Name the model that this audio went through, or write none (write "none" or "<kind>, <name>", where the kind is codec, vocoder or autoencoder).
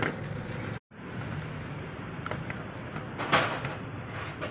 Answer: none